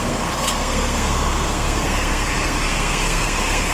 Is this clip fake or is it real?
fake